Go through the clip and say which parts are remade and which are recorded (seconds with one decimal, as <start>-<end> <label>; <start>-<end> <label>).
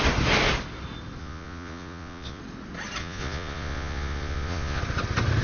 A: 0.0-1.2 recorded; 1.2-2.4 remade; 2.4-3.0 recorded; 3.0-4.8 remade; 4.8-5.4 recorded